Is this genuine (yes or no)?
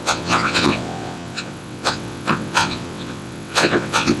no